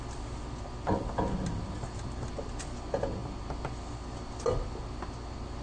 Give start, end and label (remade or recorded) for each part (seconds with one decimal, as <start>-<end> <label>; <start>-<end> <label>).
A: 0.0-5.6 recorded